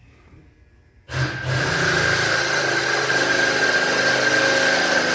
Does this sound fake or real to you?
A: real